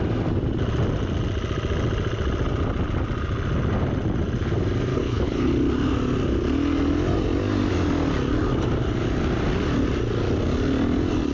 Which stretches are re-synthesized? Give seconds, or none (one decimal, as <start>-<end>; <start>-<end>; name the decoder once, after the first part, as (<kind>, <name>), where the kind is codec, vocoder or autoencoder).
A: 4.9-5.5 (codec, HILCodec)

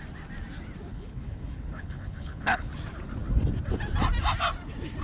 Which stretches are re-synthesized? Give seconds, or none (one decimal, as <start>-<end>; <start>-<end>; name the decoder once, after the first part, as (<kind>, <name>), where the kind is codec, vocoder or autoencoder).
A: 0.9-2.7 (codec, HILCodec)

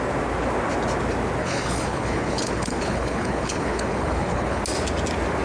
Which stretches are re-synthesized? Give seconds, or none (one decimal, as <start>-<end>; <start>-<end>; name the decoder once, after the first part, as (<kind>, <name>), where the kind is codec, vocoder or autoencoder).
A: 1.4-4.6 (codec, HILCodec)

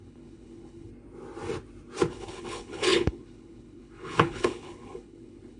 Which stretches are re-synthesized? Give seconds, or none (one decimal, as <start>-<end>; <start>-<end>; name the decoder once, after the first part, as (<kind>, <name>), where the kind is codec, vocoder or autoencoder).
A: 0.0-0.9 (codec, HILCodec); 2.1-5.6

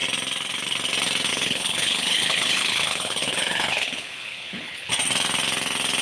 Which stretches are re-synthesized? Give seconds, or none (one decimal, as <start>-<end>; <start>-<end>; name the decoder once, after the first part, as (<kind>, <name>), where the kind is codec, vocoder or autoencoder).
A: 1.3-4.9 (codec, HILCodec)

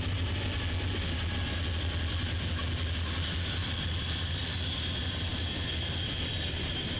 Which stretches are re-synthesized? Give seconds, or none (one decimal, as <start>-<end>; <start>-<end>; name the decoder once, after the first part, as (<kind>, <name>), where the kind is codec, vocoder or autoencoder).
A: none

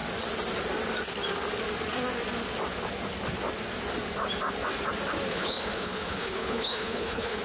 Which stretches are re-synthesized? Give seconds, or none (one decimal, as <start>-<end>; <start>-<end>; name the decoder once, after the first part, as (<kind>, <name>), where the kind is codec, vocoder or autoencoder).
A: 5.3-7.4 (codec, HILCodec)